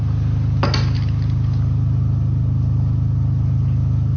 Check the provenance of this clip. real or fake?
real